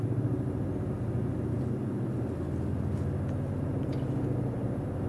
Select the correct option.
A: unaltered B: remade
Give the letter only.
A